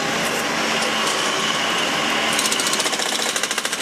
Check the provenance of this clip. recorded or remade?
recorded